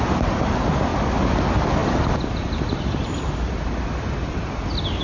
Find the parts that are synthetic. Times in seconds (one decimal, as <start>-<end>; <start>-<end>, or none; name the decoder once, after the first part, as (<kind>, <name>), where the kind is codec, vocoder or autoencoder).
none